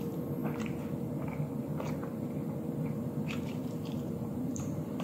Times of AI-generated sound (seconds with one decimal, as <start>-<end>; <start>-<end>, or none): 0.0-0.4; 2.8-5.0